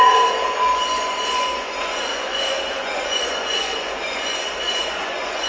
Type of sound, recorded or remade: remade